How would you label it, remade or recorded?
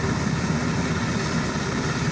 recorded